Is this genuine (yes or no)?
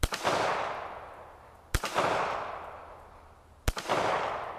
yes